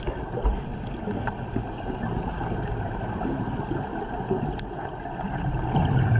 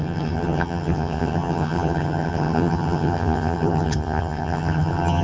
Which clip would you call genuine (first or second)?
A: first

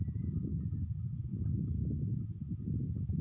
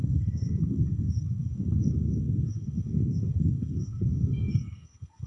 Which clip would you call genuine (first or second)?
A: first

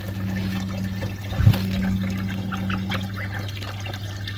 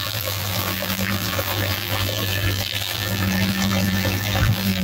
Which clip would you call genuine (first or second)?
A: first